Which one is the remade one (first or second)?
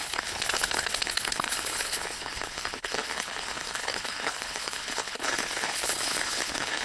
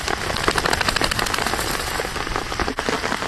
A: first